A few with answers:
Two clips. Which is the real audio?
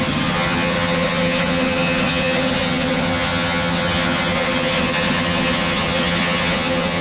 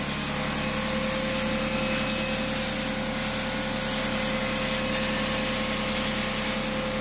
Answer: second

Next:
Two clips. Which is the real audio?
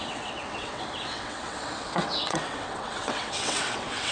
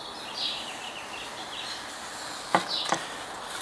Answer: second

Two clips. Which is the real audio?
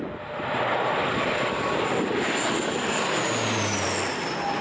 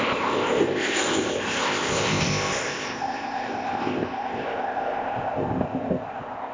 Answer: first